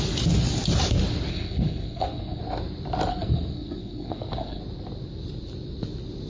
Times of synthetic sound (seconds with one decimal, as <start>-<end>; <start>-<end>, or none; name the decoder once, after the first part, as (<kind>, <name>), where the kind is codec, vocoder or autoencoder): 1.3-2.4 (codec, SNAC); 3.1-4.6